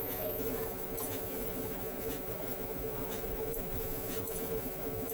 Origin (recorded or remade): remade